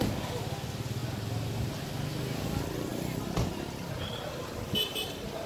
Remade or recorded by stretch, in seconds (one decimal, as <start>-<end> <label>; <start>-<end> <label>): 0.0-5.5 recorded